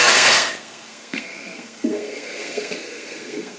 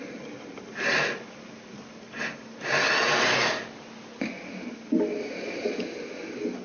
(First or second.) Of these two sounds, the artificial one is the first